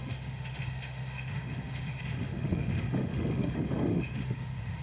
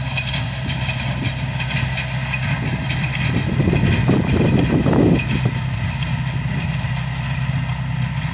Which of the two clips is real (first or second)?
second